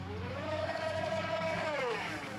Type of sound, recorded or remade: remade